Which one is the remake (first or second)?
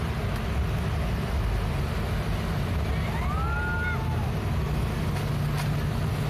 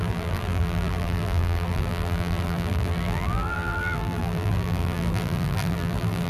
second